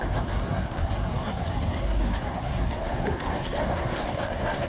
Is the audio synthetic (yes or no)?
yes